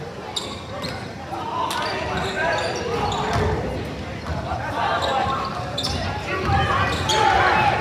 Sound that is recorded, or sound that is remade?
recorded